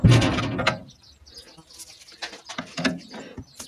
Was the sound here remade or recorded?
recorded